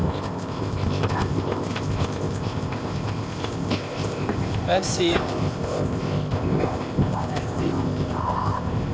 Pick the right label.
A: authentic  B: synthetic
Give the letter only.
B